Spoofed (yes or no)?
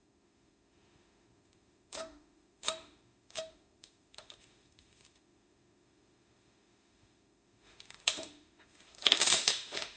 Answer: yes